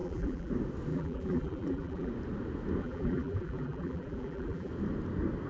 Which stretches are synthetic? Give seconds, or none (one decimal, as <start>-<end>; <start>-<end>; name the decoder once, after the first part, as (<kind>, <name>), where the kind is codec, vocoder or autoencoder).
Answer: 0.0-0.5 (vocoder, BigVGAN v2); 0.9-2.1; 2.8-4.7